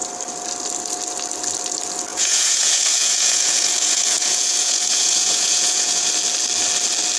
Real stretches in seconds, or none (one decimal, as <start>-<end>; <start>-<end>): 0.0-2.1; 6.1-7.2